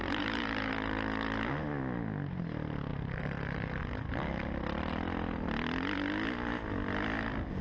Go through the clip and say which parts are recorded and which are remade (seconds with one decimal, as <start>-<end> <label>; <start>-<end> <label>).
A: 0.0-0.7 remade; 0.7-2.9 recorded; 2.9-3.8 remade; 3.8-7.6 recorded